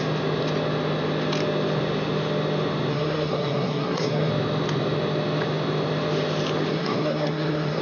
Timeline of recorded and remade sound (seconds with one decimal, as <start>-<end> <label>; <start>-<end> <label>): 0.0-2.9 recorded; 2.9-4.3 remade; 4.3-6.7 recorded; 6.7-7.8 remade